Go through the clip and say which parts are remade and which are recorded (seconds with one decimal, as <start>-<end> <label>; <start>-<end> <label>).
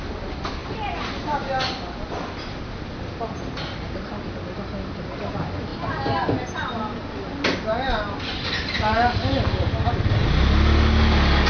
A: 0.0-11.5 recorded